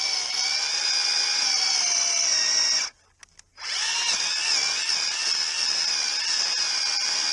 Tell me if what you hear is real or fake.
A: real